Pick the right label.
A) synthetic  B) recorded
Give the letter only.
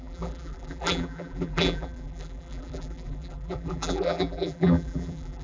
A